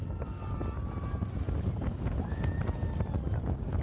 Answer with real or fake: real